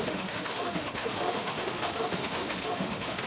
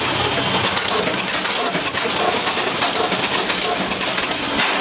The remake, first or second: first